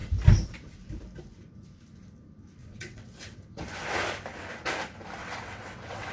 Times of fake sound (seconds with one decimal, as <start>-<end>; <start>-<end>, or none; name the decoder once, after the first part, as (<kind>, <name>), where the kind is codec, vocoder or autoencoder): 2.6-3.6 (vocoder, WaveNeXt); 5.2-6.1